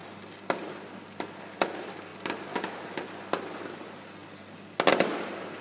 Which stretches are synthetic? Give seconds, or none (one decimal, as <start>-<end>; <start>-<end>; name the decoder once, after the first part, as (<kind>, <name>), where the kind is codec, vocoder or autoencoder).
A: none